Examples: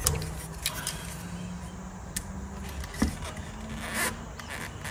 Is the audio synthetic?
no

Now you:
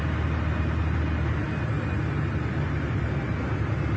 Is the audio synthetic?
no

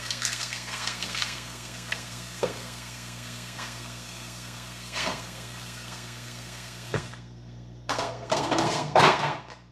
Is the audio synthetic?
yes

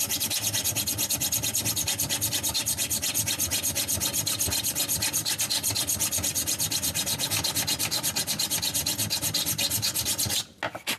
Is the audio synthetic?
no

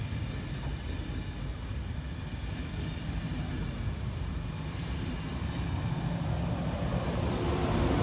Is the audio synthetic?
no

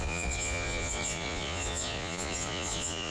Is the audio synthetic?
yes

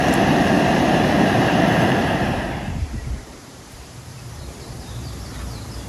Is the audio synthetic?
yes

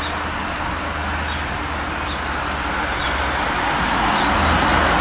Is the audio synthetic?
no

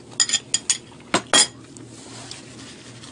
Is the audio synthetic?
no